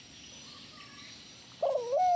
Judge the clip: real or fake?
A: real